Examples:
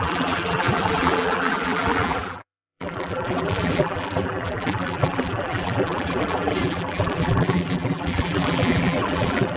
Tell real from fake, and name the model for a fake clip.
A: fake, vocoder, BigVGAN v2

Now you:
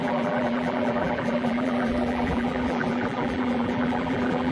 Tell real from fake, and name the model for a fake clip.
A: fake, vocoder, BigVGAN v2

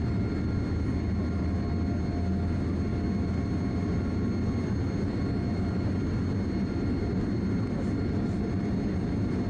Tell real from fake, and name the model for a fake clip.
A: real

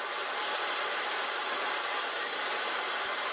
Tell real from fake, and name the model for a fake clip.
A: fake, vocoder, BigVGAN v2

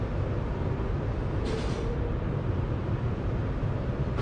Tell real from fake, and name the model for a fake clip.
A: fake, vocoder, BigVGAN v2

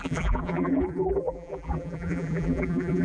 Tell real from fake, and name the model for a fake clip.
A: fake, vocoder, BigVGAN v2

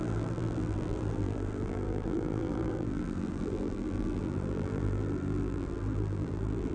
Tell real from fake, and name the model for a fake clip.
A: fake, vocoder, BigVGAN v2